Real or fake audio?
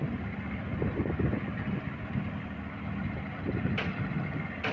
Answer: fake